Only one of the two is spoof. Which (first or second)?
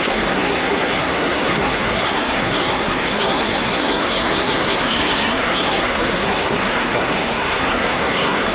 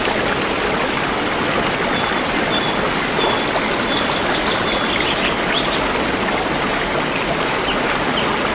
first